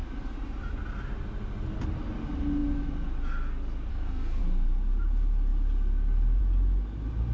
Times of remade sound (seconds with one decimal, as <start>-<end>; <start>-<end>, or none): 3.9-4.4